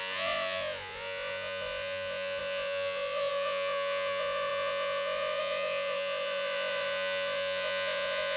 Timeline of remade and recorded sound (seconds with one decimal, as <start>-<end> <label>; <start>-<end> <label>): 0.0-8.4 remade